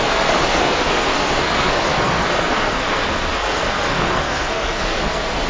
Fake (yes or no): yes